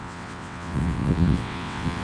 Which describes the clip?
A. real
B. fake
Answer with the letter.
B